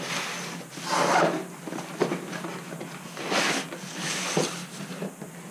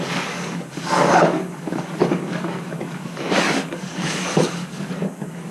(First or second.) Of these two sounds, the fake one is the second